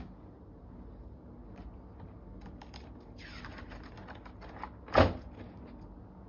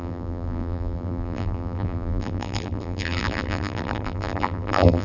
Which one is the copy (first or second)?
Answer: second